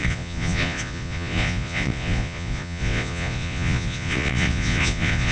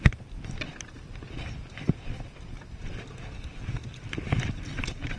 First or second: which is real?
second